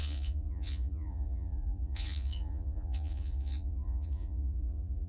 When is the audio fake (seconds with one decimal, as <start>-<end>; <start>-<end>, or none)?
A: 0.0-5.1